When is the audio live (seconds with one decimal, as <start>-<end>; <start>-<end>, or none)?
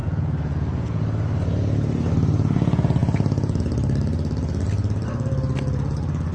1.0-6.3